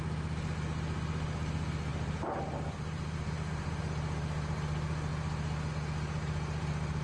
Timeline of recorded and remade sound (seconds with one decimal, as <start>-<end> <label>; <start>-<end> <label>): 0.0-1.9 recorded; 1.9-3.8 remade; 3.8-7.0 recorded